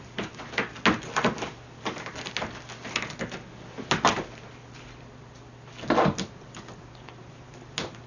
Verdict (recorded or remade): recorded